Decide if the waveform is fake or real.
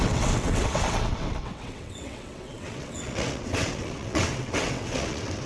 fake